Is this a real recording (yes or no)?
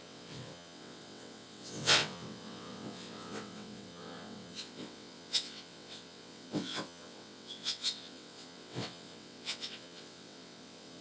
no